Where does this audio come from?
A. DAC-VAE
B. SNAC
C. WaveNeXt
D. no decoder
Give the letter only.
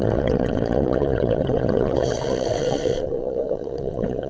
C